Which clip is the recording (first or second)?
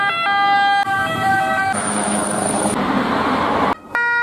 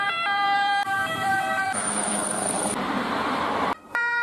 first